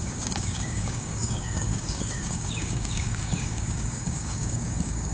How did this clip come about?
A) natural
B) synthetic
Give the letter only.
B